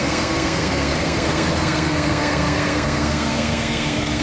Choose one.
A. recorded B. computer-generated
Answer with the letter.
B